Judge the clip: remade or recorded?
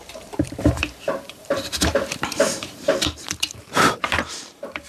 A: remade